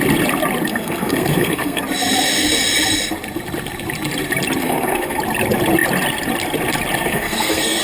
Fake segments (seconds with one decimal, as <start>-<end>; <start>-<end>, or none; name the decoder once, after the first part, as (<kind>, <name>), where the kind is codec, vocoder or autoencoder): 0.7-1.8 (codec, SNAC); 4.6-5.2; 7.0-7.8

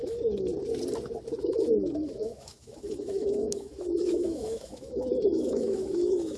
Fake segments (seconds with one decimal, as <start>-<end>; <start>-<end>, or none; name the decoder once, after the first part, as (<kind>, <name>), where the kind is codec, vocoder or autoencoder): 0.0-0.5 (autoencoder, DAC-VAE); 1.4-6.4

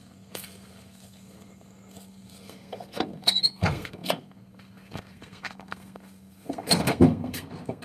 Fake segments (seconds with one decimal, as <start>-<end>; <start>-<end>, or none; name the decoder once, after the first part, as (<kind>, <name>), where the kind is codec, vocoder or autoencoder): 0.0-7.8 (codec, SNAC)

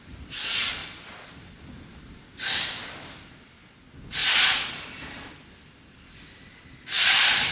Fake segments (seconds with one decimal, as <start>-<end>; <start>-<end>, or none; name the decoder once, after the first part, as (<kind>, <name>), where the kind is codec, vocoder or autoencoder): none

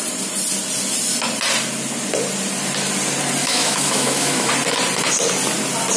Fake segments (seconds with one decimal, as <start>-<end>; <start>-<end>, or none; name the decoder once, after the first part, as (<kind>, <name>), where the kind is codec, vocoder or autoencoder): 3.4-4.5 (autoencoder, DAC-VAE)

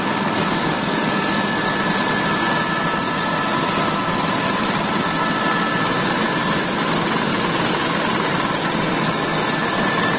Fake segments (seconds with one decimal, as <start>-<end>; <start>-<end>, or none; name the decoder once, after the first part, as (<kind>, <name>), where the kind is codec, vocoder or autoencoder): none

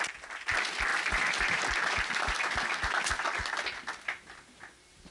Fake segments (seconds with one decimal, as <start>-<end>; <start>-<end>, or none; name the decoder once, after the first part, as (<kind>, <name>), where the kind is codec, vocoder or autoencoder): none